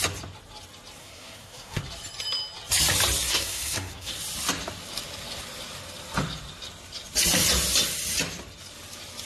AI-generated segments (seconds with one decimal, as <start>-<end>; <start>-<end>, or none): 1.0-1.8; 3.3-4.1